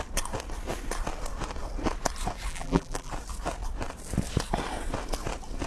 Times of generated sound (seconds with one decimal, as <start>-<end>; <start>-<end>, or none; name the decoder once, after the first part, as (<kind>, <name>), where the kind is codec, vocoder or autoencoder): 2.5-3.1 (vocoder, BigVGAN v2)